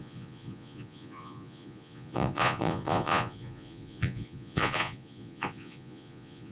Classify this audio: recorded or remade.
remade